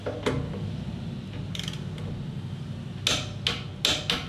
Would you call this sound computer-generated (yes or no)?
no